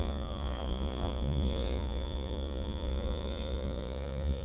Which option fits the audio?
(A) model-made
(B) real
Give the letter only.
A